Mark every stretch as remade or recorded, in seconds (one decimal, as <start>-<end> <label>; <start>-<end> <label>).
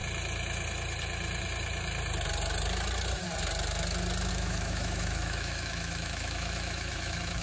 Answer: 0.0-4.3 recorded; 4.3-7.4 remade